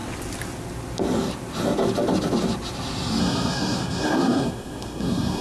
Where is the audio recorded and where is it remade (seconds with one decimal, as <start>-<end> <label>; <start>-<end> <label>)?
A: 0.0-3.2 recorded; 3.2-5.4 remade